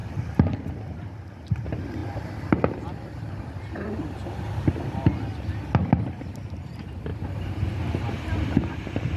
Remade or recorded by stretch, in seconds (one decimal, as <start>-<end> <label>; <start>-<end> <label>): 0.0-0.7 remade; 0.7-2.0 recorded; 2.0-4.7 remade; 4.7-7.1 recorded; 7.1-8.7 remade; 8.7-9.2 recorded

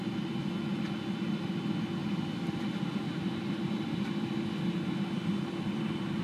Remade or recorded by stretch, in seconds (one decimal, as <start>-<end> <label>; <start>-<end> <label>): 0.0-6.2 recorded

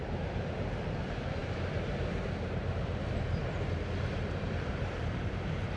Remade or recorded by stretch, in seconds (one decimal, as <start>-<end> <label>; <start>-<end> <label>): 0.0-3.4 remade; 3.4-4.0 recorded; 4.0-5.8 remade

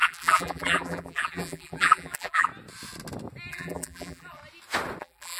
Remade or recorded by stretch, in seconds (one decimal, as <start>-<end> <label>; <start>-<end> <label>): 0.0-2.5 remade; 2.5-3.5 recorded; 3.5-4.4 remade; 4.4-5.0 recorded; 5.0-5.4 remade

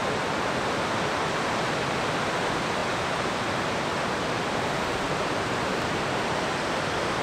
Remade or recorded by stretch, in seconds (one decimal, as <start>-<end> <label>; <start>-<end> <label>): 0.0-2.8 recorded; 2.8-7.2 remade

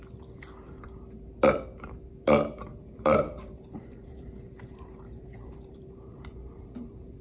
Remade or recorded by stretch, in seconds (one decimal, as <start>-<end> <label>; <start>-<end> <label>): 0.0-2.7 recorded; 2.7-7.2 remade

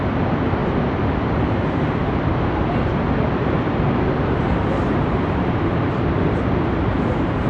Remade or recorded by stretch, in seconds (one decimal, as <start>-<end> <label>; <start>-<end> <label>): 0.0-7.5 remade